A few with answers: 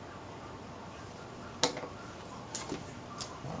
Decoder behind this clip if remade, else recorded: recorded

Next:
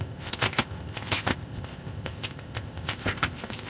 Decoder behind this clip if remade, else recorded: remade, codec, ZipCodec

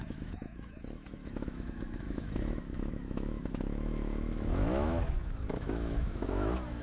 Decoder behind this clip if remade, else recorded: remade, autoencoder, DAC-VAE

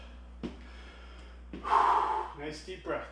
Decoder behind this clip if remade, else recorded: recorded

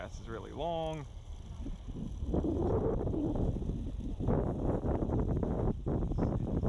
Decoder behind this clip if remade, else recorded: recorded